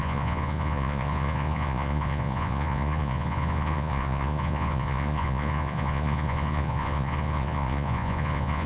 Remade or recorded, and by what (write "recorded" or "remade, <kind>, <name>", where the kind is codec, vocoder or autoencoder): remade, vocoder, Vocos